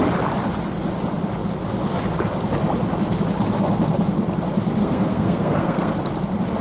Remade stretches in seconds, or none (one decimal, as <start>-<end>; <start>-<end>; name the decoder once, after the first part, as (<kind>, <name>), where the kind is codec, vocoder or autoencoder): 4.8-5.9 (codec, SNAC)

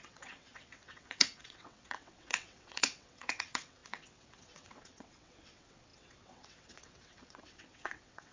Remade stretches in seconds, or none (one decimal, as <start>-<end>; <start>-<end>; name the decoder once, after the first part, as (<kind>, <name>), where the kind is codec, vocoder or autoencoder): 0.0-8.3 (vocoder, WaveNeXt)

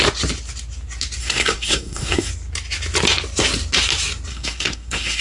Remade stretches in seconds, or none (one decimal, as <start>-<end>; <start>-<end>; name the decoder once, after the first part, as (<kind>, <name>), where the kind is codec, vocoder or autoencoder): 1.2-2.3 (codec, SNAC); 4.3-5.2

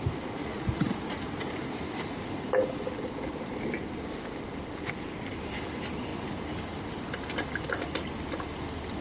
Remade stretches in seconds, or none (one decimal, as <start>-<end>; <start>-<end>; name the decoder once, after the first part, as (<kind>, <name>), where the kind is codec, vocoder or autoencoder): 0.4-1.2 (vocoder, Vocos)

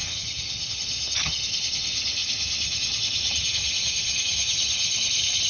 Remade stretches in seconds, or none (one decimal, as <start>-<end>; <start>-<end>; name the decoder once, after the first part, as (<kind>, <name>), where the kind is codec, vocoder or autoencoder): 0.0-5.5 (vocoder, HiFi-GAN)

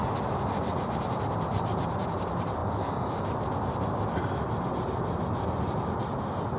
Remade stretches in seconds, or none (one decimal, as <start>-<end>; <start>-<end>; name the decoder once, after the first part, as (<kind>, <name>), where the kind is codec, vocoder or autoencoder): none

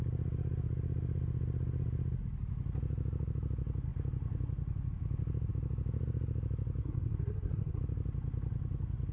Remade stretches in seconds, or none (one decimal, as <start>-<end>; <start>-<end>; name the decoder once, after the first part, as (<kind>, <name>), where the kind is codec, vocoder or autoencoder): 6.8-7.8 (codec, SNAC)

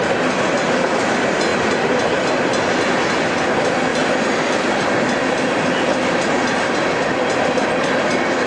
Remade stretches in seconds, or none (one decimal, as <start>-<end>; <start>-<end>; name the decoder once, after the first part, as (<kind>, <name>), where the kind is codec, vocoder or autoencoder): 1.5-2.3 (vocoder, BigVGAN v2); 3.9-7.7